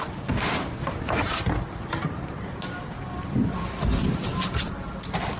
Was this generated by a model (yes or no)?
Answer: no